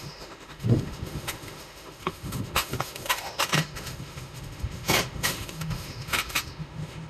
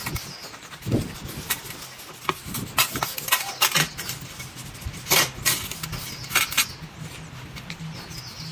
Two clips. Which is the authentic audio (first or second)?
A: second